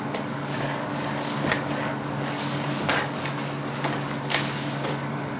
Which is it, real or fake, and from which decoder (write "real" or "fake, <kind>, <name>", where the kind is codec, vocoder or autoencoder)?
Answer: fake, codec, DAC